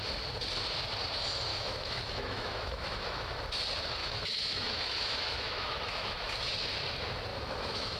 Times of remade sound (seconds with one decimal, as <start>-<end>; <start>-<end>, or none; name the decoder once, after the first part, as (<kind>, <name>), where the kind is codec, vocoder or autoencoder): 1.5-3.4 (autoencoder, DAC-VAE); 4.0-6.5; 7.3-8.0

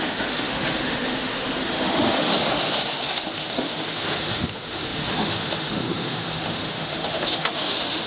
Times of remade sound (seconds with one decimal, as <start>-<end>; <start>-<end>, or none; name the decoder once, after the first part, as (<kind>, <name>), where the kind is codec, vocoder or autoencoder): 0.0-8.1 (autoencoder, DAC-VAE)

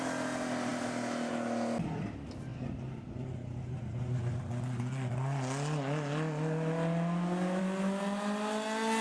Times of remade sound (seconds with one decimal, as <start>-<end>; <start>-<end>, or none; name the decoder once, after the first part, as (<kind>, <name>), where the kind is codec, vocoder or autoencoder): none

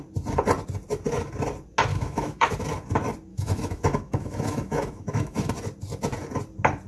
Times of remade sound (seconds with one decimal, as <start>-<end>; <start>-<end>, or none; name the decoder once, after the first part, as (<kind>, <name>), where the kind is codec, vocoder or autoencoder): 1.9-2.5 (autoencoder, DAC-VAE); 3.3-5.5

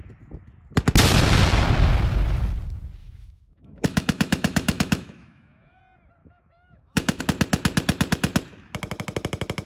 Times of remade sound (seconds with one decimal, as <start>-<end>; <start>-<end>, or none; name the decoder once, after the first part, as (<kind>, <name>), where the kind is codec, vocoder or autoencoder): 3.0-5.8 (autoencoder, DAC-VAE); 6.2-7.2

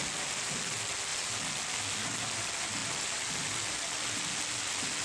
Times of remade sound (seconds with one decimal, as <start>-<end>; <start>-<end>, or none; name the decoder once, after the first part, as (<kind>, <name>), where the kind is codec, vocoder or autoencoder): none